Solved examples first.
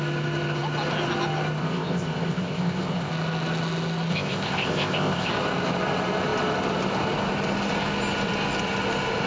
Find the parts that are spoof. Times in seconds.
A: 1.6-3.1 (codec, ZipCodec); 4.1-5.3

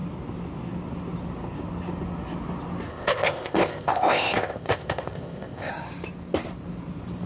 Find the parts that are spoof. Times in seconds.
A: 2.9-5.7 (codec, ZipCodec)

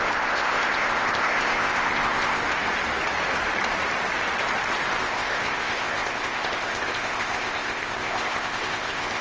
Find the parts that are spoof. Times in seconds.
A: 0.0-2.4 (codec, ZipCodec); 5.0-9.2

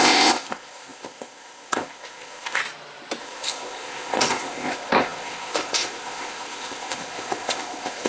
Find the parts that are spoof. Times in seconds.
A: 0.0-2.6 (codec, ZipCodec); 3.2-8.1